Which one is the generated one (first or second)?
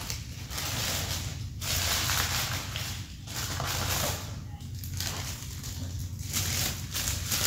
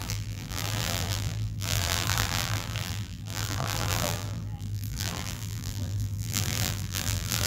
second